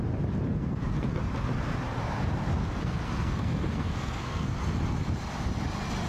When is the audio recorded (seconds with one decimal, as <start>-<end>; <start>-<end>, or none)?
0.0-0.5; 1.1-2.6; 4.6-6.1